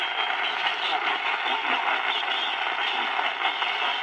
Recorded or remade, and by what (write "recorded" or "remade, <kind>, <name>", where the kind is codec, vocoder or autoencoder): recorded